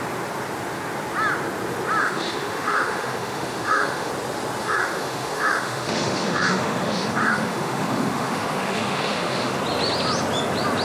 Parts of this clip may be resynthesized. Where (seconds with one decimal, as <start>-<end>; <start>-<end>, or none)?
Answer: 2.0-4.1; 4.6-9.6